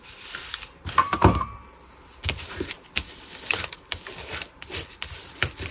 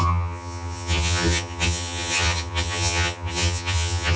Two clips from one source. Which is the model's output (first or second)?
second